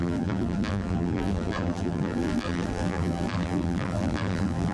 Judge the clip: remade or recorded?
remade